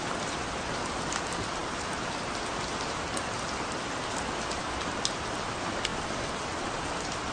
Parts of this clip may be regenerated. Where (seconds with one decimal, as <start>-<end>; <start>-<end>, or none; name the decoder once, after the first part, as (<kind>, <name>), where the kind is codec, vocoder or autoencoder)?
none